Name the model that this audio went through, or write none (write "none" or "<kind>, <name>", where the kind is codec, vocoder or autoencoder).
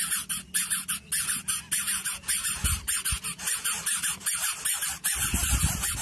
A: none